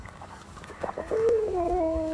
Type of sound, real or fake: fake